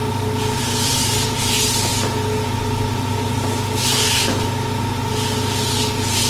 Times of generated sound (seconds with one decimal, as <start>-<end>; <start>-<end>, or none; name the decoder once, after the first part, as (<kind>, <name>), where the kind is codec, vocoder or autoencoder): 0.9-1.4 (vocoder, BigVGAN v2)